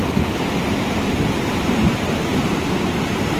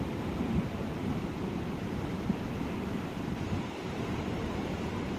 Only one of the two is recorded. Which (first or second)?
first